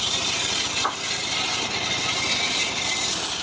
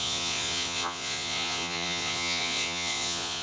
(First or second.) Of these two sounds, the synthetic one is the second